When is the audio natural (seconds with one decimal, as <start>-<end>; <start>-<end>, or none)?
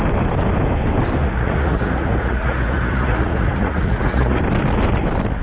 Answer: 0.0-1.2; 4.4-5.4